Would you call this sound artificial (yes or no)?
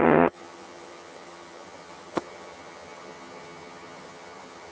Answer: yes